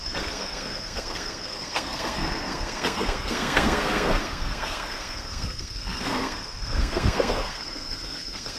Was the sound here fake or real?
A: fake